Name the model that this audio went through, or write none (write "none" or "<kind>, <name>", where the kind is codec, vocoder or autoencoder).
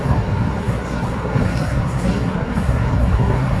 codec, SNAC